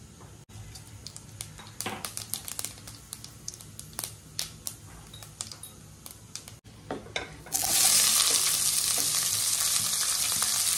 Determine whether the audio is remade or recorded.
recorded